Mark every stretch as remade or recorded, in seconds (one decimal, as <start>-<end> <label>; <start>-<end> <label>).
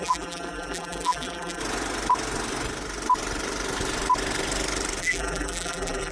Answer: 0.0-1.6 remade; 1.6-5.0 recorded; 5.0-6.1 remade